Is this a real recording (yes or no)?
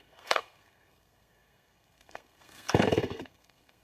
no